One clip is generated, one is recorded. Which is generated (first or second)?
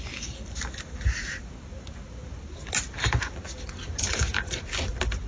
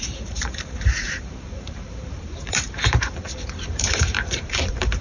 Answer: second